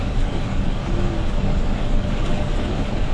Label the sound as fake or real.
fake